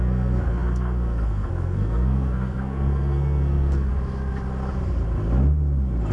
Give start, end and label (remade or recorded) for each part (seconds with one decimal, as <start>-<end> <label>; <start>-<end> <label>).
0.0-3.9 remade; 3.9-6.1 recorded